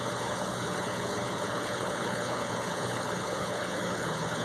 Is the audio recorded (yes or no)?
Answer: no